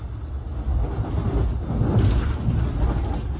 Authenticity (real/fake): real